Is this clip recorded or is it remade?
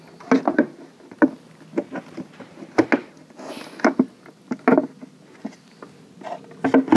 recorded